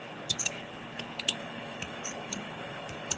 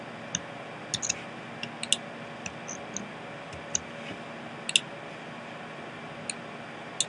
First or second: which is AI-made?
first